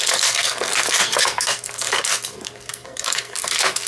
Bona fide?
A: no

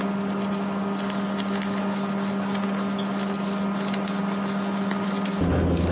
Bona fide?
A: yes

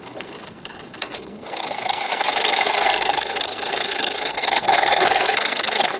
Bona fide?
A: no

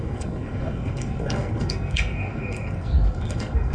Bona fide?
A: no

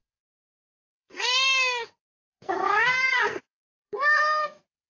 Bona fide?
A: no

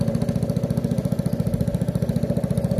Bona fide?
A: yes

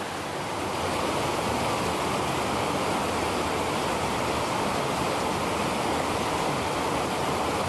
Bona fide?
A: yes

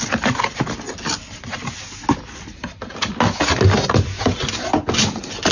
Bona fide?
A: yes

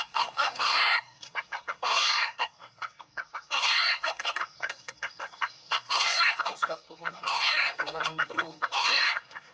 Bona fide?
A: no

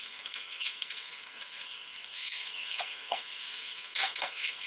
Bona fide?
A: no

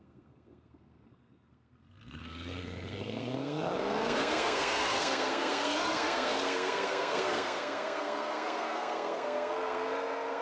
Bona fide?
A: no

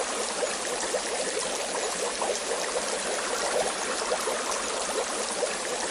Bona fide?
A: yes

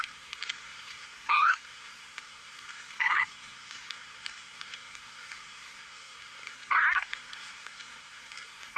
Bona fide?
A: no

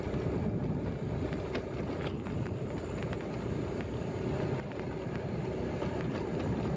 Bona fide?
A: yes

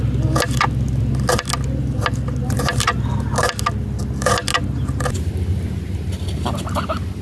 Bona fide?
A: yes